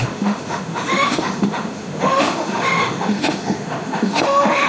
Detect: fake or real fake